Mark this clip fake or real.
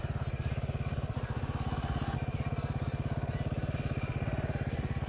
real